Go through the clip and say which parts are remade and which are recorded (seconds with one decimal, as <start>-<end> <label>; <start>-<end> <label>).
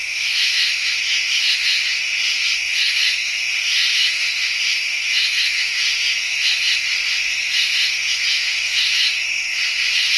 0.0-10.2 remade